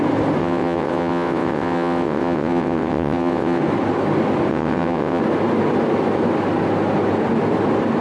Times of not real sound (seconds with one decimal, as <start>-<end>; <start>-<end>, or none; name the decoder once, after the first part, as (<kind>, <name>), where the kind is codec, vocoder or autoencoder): 0.4-3.6 (vocoder, WaveNeXt); 4.5-5.2